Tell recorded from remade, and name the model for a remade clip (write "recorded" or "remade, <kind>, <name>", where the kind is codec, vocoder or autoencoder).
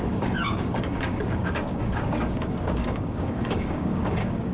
remade, codec, DAC